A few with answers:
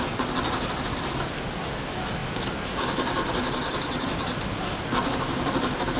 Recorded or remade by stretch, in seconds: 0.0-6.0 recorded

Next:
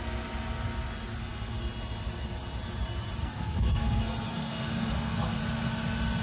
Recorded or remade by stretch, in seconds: 0.0-3.2 recorded; 3.2-4.0 remade; 4.0-4.4 recorded; 4.4-5.4 remade; 5.4-6.2 recorded

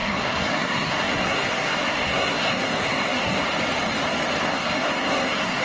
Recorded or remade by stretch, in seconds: 0.0-3.4 remade; 3.4-4.4 recorded; 4.4-5.6 remade

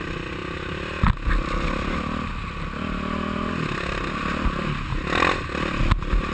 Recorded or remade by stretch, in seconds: 0.0-6.3 recorded